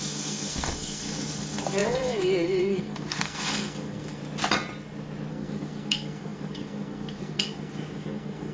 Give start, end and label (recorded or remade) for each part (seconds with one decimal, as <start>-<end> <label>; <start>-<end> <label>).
0.0-4.2 remade; 4.2-5.3 recorded; 5.3-8.5 remade